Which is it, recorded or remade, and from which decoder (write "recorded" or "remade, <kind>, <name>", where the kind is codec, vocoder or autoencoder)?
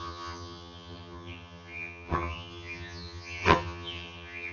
remade, vocoder, HiFi-GAN